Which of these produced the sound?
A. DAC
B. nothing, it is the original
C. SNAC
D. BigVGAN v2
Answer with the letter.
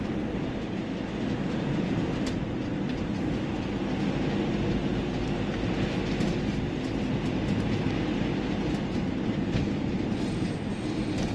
B